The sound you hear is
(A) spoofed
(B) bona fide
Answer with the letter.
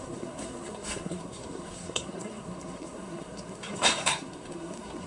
A